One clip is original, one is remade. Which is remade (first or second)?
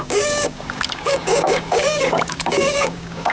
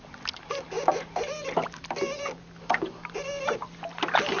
first